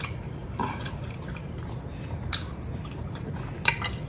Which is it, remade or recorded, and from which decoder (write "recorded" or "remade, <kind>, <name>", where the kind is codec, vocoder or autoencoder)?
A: recorded